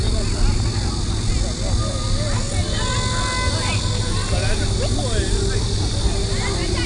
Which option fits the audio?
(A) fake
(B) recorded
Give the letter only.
B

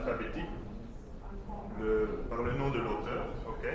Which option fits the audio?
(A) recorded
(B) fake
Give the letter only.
A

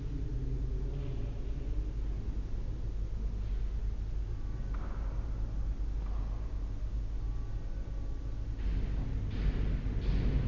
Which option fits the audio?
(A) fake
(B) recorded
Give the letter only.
B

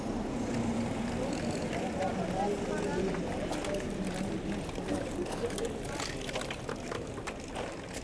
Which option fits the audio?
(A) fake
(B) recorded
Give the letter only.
B